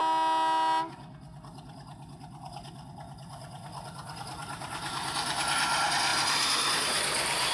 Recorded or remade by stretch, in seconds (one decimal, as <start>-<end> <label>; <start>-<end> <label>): 0.0-4.2 recorded; 4.2-7.5 remade